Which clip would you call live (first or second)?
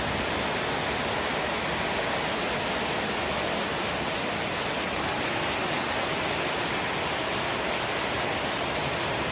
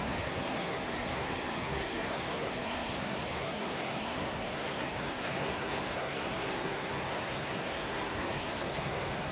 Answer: first